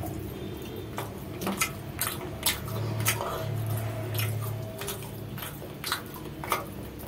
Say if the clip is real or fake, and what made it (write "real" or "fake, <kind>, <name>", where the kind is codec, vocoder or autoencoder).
real